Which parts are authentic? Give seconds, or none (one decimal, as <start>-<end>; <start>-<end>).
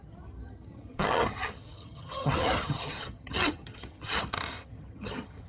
none